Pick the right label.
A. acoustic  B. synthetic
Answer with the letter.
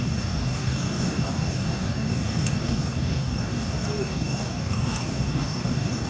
B